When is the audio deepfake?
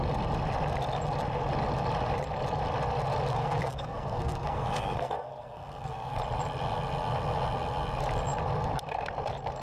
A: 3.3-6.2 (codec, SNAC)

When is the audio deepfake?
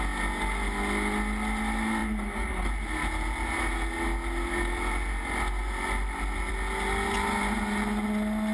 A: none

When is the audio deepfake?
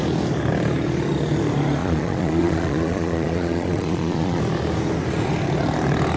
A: 1.8-4.4 (vocoder, Vocos)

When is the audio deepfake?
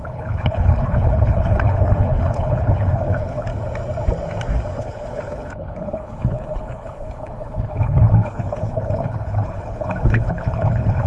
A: 0.0-3.5 (codec, HILCodec); 4.8-11.1